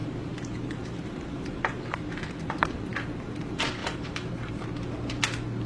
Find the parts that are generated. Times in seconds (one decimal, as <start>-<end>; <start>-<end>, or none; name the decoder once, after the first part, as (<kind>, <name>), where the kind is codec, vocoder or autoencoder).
0.0-1.8 (vocoder, BigVGAN v2); 3.8-4.5